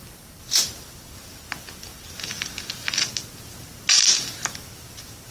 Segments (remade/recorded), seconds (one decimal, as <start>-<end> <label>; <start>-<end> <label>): 0.0-5.3 recorded